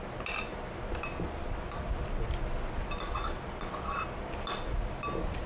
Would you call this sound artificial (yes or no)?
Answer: no